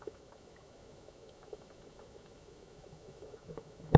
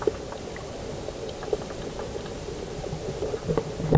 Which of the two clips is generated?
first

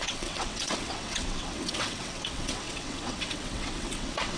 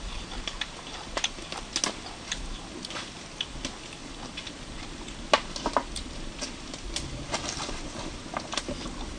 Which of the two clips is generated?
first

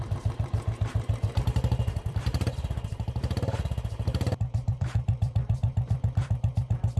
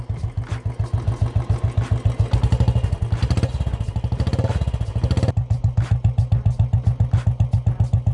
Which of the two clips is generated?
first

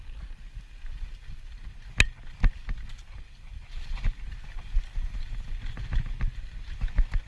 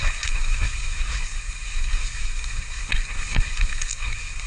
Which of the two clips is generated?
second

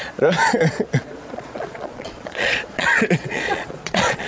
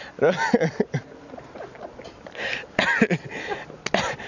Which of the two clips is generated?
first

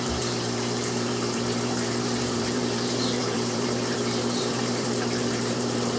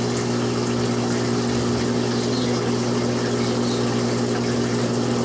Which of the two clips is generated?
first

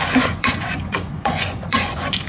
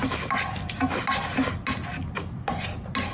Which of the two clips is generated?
first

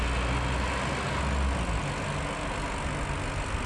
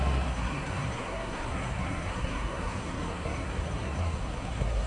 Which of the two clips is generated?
second